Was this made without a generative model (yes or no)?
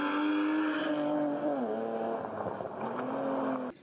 yes